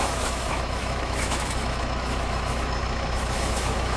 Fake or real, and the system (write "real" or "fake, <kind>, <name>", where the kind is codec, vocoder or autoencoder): fake, autoencoder, DAC-VAE